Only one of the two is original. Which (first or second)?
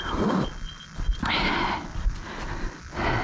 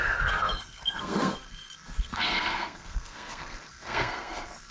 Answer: first